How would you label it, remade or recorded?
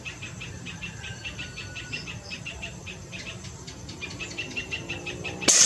recorded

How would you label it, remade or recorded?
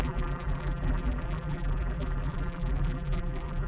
remade